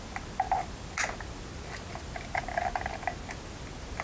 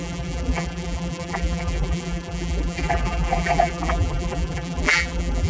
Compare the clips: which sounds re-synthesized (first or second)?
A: second